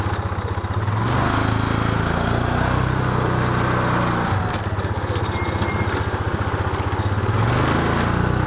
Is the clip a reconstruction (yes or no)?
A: no